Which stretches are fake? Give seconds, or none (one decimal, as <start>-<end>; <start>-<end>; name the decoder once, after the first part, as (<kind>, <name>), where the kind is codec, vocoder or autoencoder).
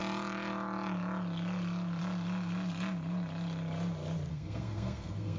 4.3-5.4 (codec, SNAC)